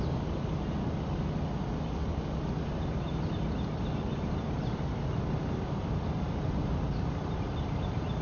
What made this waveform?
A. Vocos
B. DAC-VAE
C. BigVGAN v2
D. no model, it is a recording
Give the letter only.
D